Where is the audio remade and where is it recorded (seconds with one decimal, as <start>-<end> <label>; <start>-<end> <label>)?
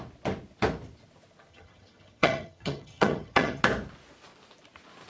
0.0-1.5 recorded; 1.5-3.6 remade; 3.6-5.1 recorded